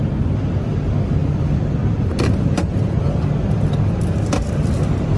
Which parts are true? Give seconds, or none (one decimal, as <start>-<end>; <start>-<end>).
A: 0.0-5.2